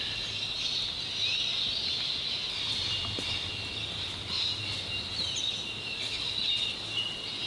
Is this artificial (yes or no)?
no